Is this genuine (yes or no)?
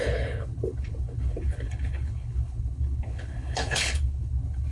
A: no